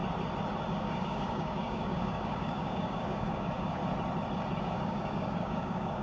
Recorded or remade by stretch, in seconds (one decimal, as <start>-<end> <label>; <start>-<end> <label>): 0.0-0.7 recorded; 0.7-3.8 remade; 3.8-4.6 recorded; 4.6-6.0 remade